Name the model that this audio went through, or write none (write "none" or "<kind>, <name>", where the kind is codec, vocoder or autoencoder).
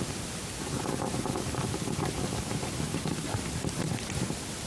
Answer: none